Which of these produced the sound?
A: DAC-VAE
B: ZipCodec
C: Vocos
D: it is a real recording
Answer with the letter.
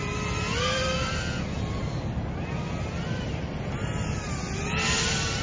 D